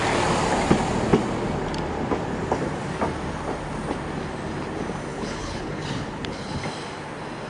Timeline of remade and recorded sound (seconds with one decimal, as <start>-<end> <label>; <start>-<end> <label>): 0.0-5.1 recorded; 5.1-6.6 remade; 6.6-7.5 recorded